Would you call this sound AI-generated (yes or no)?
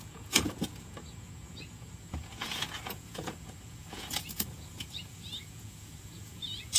yes